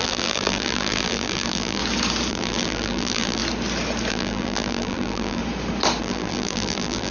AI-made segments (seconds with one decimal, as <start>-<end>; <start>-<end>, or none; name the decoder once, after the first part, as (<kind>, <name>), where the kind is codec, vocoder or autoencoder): 0.0-1.8 (vocoder, BigVGAN v2); 2.3-3.4; 4.1-5.4; 6.0-7.1